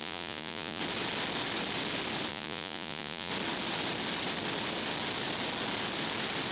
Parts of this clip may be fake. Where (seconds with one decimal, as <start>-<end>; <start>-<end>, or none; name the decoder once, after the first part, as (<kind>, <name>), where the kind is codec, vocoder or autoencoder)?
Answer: 0.0-0.8 (vocoder, Vocos); 2.3-3.3